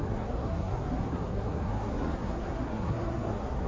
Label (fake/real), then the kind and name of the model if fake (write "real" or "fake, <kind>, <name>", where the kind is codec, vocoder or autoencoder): fake, codec, SNAC